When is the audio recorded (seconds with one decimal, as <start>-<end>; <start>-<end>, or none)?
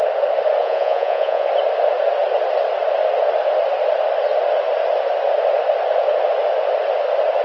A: 0.0-0.6; 1.5-7.4